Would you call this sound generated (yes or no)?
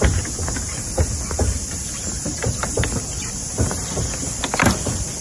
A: no